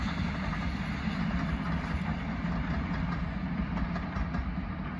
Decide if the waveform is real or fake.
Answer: real